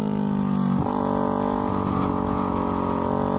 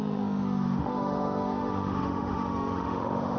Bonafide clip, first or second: first